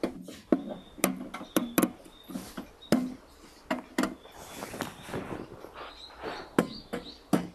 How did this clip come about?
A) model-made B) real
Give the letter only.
B